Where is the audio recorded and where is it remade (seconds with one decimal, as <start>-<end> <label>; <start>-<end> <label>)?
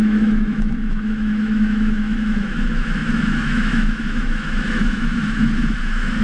0.0-6.2 remade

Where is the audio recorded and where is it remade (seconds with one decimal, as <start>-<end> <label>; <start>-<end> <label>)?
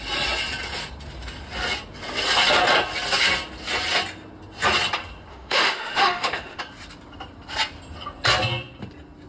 0.0-5.3 recorded; 5.3-6.6 remade; 6.6-9.3 recorded